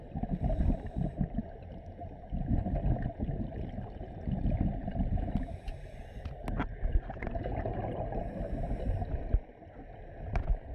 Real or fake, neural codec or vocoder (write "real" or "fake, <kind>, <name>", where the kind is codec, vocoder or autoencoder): real